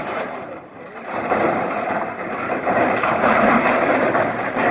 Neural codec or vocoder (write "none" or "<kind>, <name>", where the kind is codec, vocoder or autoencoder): vocoder, BigVGAN v2